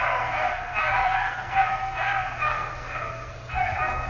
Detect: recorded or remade remade